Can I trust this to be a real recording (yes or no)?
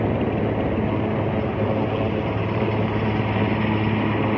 yes